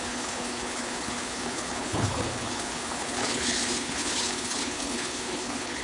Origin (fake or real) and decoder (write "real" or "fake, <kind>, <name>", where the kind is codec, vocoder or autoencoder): fake, codec, HILCodec